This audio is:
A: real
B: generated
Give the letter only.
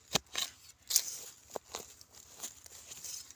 A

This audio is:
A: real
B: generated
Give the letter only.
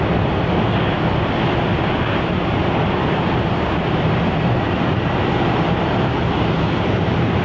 A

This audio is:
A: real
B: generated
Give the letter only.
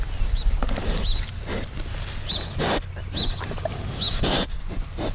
A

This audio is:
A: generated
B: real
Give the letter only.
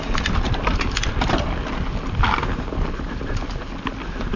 B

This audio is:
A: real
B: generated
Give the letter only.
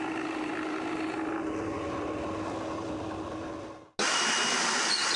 A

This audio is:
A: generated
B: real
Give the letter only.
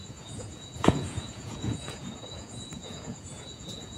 A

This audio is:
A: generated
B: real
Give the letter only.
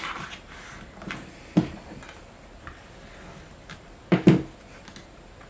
B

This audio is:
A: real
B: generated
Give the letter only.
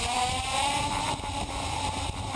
B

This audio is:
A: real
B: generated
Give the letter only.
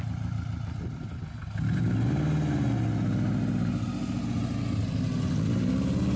A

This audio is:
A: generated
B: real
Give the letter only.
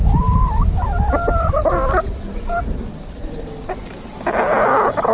B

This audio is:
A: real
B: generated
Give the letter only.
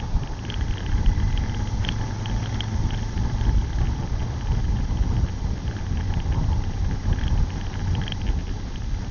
A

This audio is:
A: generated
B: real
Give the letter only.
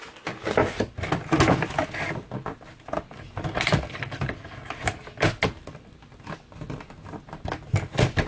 B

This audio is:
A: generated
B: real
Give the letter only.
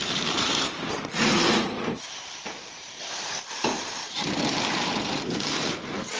A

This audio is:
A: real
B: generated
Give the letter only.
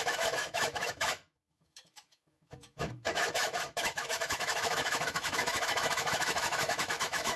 B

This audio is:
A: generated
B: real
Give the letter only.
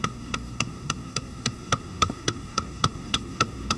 A